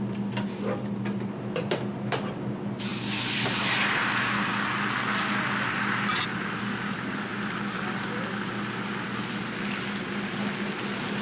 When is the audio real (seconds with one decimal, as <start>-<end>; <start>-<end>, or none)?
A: 0.0-11.2